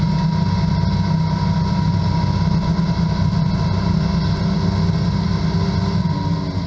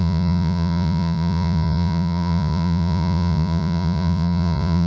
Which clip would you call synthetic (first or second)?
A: second